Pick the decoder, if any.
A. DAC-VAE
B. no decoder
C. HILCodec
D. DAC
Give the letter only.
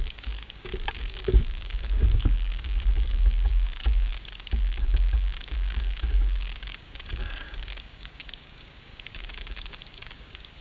D